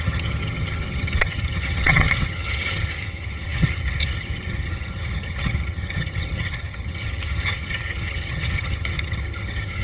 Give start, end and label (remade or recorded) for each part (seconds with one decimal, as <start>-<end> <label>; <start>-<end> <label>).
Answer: 0.0-9.8 remade